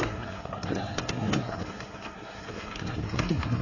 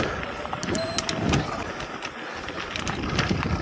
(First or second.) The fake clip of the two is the first